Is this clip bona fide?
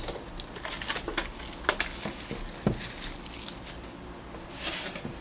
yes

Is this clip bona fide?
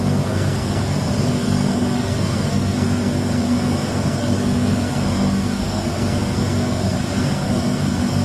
no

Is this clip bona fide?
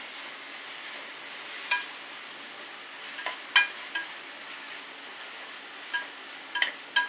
yes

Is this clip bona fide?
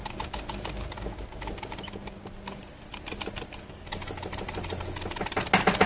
yes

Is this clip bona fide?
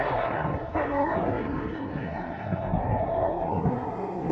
no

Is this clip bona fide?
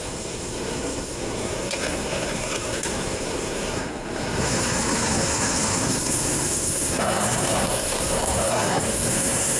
no